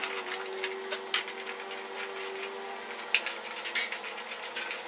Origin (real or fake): real